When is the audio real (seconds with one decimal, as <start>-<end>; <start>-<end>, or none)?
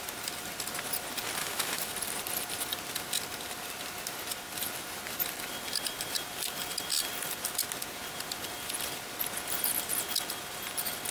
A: 0.0-1.4; 1.9-11.1